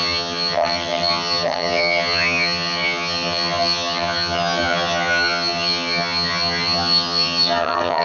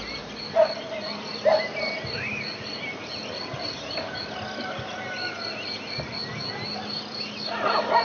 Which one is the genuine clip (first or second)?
second